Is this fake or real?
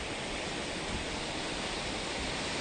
real